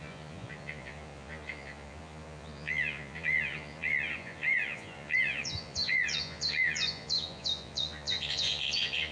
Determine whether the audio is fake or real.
fake